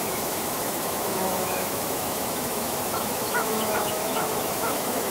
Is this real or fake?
fake